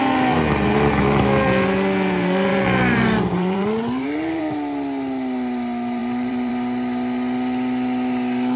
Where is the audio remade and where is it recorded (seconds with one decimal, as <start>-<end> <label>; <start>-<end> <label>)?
0.0-2.5 recorded; 2.5-4.4 remade; 4.4-6.0 recorded; 6.0-6.5 remade; 6.5-8.6 recorded